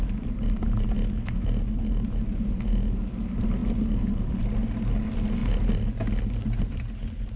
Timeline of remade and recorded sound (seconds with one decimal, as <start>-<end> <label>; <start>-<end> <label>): 0.0-3.6 recorded; 3.6-4.4 remade; 4.4-7.4 recorded